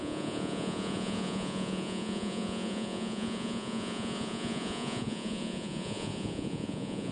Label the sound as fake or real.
fake